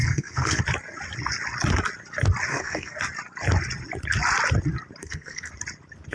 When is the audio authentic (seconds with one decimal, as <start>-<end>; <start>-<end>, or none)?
0.6-2.5; 3.0-5.0; 5.5-6.1

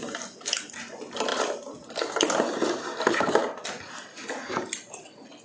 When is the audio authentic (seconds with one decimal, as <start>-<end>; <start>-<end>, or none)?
0.0-5.4

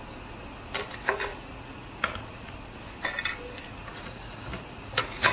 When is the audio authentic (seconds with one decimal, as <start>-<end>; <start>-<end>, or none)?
0.0-1.3; 2.5-3.7

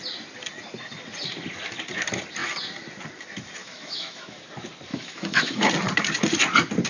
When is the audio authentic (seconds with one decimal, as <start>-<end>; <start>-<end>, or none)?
0.0-3.6; 4.4-4.9; 5.7-6.9

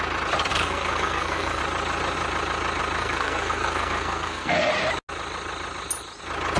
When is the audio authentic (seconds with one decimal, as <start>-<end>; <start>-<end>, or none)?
0.0-0.5; 1.6-3.0; 4.7-6.6

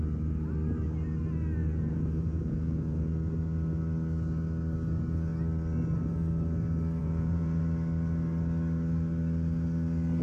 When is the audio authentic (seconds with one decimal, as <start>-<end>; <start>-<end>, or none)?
0.0-1.6; 3.1-7.0; 7.6-10.2

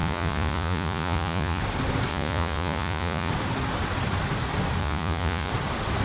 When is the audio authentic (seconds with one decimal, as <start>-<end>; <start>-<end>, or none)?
1.6-2.1; 3.3-4.8; 5.5-6.0

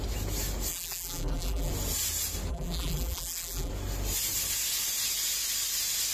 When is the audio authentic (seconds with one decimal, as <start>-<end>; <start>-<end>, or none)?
0.0-0.7; 1.7-2.5; 3.7-6.1